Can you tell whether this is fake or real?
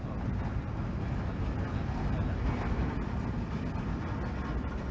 real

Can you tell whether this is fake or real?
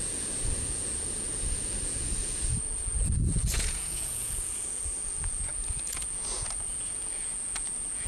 fake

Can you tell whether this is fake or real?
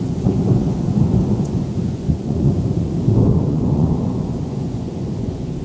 fake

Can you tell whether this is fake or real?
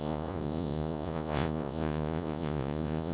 fake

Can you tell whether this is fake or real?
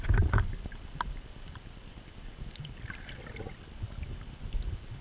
real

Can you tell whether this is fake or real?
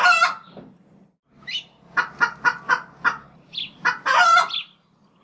real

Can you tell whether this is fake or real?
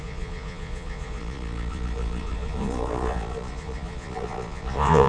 fake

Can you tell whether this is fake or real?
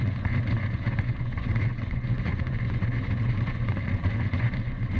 fake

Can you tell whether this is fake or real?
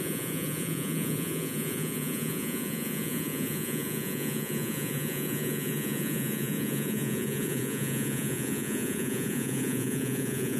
fake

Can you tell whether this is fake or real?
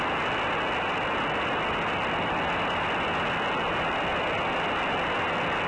real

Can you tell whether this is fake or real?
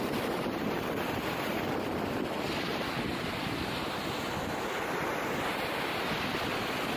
real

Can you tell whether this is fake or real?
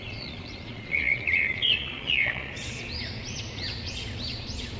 fake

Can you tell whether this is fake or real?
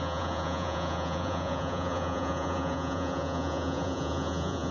fake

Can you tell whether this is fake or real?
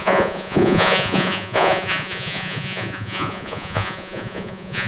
fake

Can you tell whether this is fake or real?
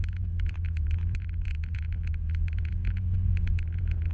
fake